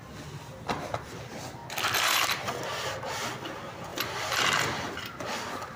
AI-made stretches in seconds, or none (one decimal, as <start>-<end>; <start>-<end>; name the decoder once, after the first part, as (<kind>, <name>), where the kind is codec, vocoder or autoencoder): none